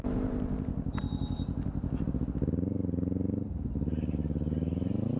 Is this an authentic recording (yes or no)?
yes